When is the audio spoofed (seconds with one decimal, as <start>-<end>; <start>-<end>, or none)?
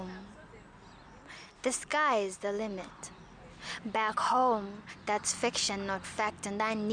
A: none